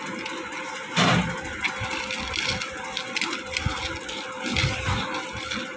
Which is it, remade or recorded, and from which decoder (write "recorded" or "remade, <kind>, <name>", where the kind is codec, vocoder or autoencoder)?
recorded